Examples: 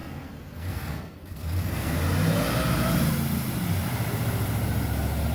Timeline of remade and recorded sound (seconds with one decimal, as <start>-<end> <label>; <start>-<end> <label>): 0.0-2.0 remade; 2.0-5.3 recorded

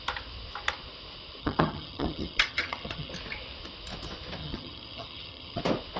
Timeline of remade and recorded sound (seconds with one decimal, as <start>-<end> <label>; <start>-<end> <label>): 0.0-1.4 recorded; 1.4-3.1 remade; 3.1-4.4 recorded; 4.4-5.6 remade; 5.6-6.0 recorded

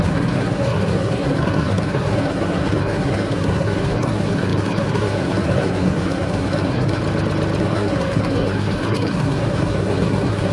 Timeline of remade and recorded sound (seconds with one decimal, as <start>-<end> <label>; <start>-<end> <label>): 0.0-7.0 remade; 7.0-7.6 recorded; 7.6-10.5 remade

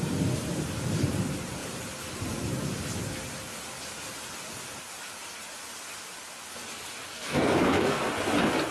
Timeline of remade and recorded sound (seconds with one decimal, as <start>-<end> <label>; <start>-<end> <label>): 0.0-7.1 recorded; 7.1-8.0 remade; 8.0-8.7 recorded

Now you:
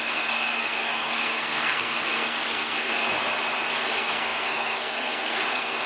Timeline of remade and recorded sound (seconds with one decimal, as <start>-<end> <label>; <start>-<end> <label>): 0.0-3.1 remade; 3.1-3.7 recorded; 3.7-5.9 remade

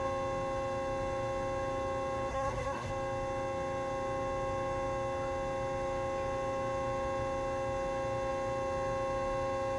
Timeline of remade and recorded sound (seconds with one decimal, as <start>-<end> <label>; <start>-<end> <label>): 0.0-2.3 recorded; 2.3-2.9 remade; 2.9-9.8 recorded